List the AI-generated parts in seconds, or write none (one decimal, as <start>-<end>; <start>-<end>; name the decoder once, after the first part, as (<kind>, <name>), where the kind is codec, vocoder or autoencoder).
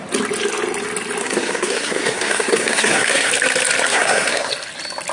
1.2-3.3 (codec, SNAC); 3.9-4.5